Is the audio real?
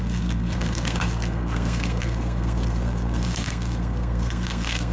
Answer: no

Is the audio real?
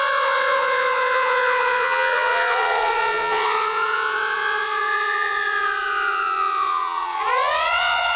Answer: no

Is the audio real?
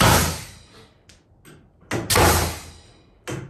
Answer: yes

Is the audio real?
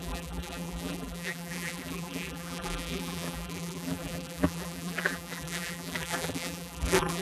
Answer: no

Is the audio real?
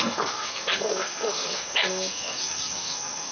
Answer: no